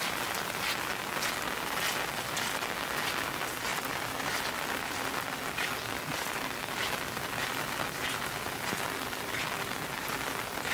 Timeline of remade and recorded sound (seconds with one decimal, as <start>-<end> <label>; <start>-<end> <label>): 0.0-10.7 recorded